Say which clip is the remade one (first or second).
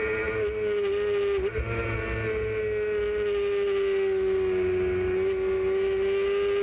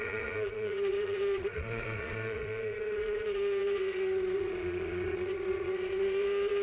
second